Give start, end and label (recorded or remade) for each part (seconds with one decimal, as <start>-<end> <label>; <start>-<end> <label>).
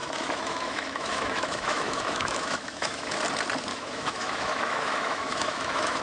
0.0-3.2 remade; 3.2-3.7 recorded; 3.7-6.0 remade